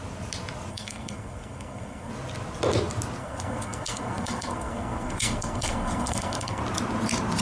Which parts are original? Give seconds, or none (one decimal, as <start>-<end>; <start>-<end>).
0.0-0.7; 2.1-3.2; 6.6-7.4